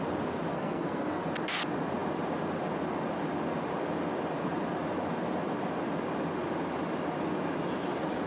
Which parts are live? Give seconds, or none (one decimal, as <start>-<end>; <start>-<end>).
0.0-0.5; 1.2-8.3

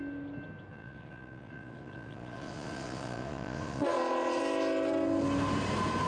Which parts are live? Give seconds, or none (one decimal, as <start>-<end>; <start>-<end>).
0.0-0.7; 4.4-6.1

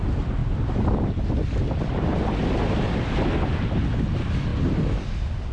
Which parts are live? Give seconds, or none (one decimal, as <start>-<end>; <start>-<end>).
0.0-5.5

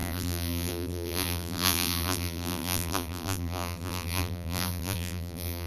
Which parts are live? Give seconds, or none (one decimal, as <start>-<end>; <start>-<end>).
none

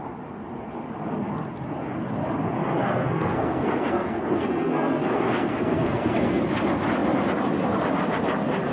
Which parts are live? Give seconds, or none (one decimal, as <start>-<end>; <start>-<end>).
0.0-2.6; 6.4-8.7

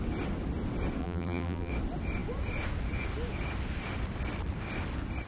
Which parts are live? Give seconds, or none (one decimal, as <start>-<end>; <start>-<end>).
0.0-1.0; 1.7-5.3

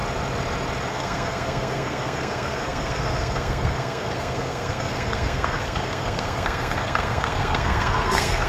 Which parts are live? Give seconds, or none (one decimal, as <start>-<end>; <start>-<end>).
0.0-0.9